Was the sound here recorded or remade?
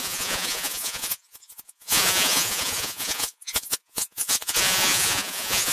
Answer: remade